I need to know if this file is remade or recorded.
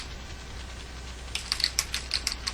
remade